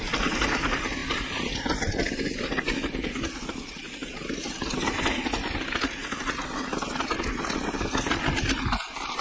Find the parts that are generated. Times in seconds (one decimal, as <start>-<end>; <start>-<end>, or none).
none